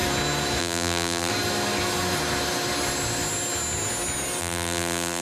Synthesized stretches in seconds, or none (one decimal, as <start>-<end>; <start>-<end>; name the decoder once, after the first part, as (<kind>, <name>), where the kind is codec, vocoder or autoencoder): 0.6-1.3 (vocoder, BigVGAN v2); 4.4-5.2